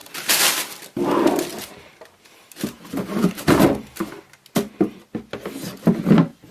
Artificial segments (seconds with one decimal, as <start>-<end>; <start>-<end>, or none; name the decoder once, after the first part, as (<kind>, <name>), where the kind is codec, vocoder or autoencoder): 0.0-3.6 (vocoder, BigVGAN v2)